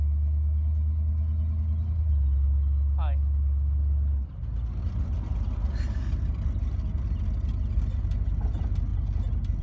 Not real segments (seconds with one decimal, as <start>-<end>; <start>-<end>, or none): none